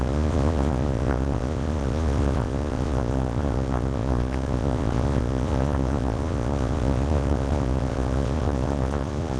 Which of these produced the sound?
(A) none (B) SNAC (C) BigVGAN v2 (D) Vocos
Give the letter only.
D